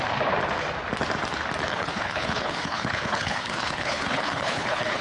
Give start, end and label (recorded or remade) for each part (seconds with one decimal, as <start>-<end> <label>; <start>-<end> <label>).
0.0-1.7 recorded; 1.7-5.0 remade